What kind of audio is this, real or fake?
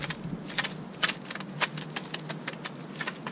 real